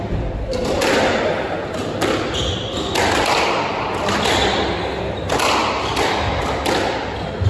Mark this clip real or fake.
real